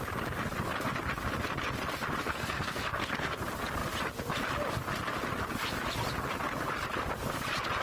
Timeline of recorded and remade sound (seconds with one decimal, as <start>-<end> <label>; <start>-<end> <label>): 0.0-2.3 recorded; 2.3-3.4 remade; 3.4-7.8 recorded